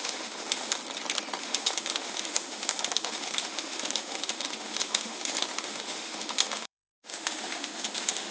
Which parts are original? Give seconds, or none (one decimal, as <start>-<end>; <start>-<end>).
0.8-1.4